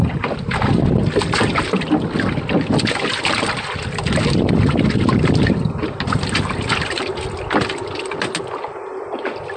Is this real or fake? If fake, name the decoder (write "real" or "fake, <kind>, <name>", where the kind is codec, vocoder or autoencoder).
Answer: real